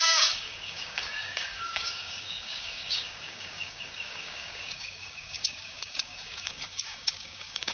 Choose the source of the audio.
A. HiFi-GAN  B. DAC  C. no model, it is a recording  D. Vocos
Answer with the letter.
B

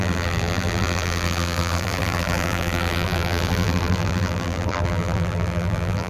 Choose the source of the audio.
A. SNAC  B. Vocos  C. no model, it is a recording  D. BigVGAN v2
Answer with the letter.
D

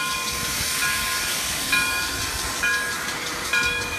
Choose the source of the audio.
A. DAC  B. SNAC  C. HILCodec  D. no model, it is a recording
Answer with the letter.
A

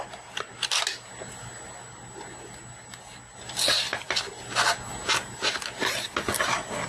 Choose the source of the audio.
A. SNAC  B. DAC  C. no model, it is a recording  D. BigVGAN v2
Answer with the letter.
C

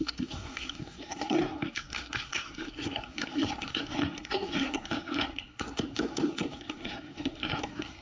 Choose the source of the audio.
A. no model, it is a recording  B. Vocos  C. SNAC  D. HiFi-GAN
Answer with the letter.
C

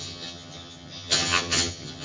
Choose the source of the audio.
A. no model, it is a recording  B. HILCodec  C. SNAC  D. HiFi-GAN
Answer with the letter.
D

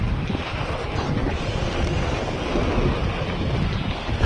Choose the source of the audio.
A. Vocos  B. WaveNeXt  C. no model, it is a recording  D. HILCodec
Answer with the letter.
C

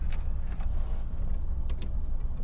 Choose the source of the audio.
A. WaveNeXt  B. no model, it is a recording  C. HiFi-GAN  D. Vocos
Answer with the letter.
B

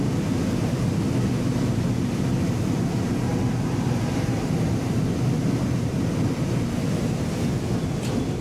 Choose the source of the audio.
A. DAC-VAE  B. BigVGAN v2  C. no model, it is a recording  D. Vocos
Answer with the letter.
C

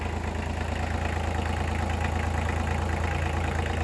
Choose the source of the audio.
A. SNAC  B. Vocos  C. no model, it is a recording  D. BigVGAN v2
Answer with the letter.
C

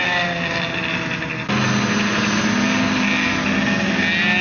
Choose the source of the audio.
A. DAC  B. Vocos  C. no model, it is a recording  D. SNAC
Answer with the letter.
C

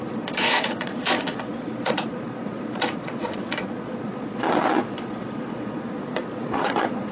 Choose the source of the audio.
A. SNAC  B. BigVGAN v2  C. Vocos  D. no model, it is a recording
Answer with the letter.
C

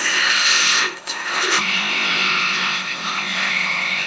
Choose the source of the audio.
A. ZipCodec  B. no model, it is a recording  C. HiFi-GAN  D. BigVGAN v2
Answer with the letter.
A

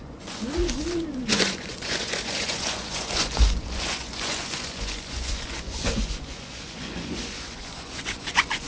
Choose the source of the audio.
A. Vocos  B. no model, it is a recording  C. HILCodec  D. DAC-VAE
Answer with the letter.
A